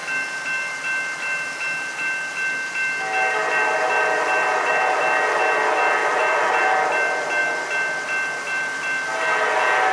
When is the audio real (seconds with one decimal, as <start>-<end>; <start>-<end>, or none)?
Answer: 0.0-6.0; 6.5-9.9